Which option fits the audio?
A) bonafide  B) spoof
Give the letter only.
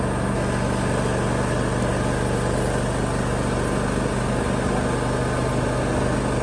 A